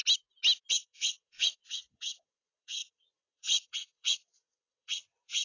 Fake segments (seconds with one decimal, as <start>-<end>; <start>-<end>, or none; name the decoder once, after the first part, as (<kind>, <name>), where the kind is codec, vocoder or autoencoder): 0.7-5.4 (vocoder, WaveNeXt)